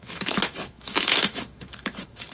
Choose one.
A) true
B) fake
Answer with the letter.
B